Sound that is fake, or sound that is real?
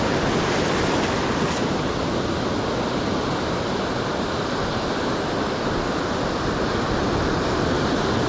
real